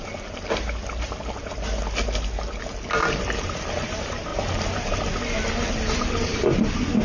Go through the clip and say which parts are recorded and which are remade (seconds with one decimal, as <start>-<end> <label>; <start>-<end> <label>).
0.0-7.0 recorded